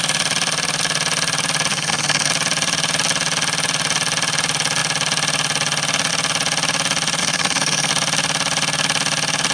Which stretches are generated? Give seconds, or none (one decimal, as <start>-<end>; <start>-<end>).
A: 1.7-2.3; 7.2-7.9